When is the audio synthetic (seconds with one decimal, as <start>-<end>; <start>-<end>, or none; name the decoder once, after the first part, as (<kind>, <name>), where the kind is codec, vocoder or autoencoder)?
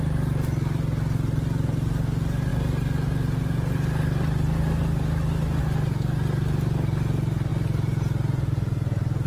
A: none